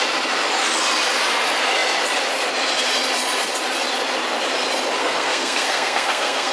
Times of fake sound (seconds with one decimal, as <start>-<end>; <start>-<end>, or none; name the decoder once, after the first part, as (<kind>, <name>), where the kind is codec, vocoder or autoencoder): 5.0-6.5 (codec, SNAC)